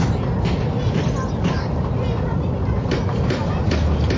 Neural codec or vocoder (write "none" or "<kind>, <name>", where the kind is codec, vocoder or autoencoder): none